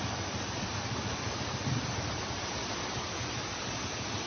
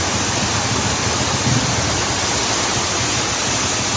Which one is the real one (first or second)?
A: second